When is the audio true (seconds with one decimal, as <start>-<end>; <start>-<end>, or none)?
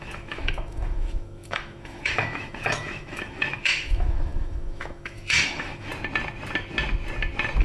5.9-7.6